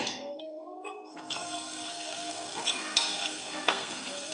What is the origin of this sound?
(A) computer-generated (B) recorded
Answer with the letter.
A